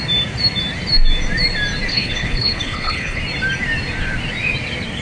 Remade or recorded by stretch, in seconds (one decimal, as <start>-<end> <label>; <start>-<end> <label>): 0.0-1.9 recorded; 1.9-3.2 remade; 3.2-5.0 recorded